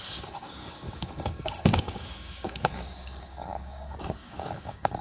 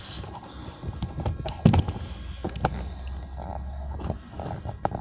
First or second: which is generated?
first